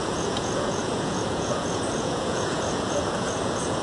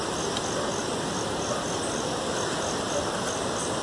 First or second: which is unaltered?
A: second